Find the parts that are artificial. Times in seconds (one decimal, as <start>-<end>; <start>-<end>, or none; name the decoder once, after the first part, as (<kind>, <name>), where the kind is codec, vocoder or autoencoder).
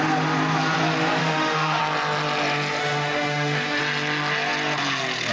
1.2-1.8 (autoencoder, DAC-VAE); 2.8-3.8